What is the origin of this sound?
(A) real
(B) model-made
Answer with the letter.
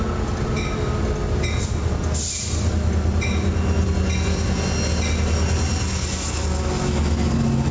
A